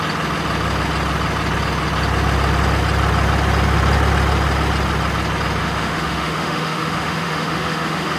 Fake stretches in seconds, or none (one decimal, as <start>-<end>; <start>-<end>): 5.6-8.2